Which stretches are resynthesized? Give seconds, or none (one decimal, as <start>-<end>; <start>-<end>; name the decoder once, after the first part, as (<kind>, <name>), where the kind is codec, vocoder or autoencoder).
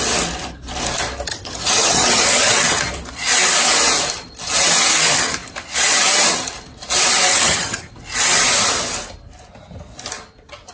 1.3-2.5 (vocoder, HiFi-GAN); 7.3-7.9